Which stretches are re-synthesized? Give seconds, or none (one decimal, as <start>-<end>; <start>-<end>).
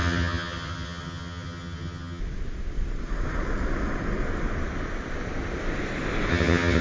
0.0-2.2; 6.3-6.8